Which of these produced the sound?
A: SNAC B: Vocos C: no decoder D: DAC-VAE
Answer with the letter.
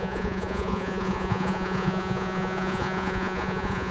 B